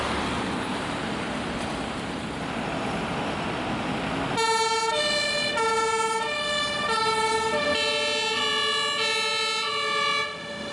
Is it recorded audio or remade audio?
recorded